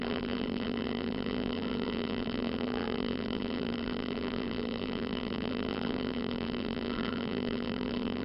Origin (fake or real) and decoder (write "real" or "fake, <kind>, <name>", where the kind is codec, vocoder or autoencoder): fake, vocoder, BigVGAN v2